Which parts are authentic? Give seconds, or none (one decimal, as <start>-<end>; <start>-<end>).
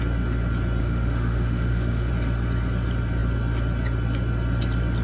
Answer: 0.0-0.8; 2.1-5.0